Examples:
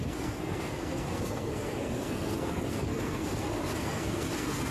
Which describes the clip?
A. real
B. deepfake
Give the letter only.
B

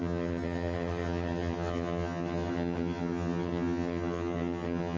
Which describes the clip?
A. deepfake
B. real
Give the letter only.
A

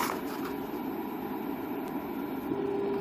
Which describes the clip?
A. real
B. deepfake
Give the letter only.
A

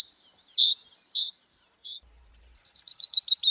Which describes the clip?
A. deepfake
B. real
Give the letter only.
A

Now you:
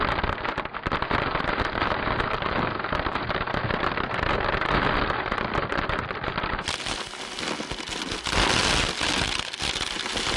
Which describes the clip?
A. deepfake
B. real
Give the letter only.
B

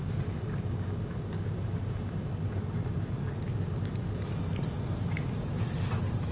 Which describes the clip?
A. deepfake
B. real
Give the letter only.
B